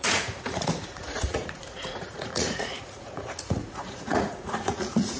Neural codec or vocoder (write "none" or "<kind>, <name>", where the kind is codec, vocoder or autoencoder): vocoder, Vocos